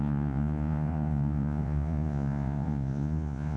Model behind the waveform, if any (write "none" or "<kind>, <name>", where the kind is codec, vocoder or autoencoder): vocoder, Vocos